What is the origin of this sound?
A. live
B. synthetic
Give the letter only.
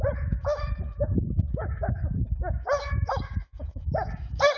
B